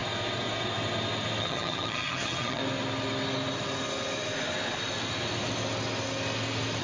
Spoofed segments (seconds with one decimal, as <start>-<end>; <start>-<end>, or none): 1.4-2.6